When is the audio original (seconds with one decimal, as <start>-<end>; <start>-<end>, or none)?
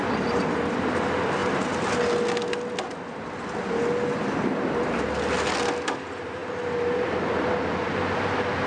0.0-8.7